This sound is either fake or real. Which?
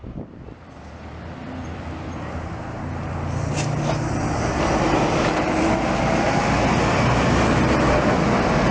real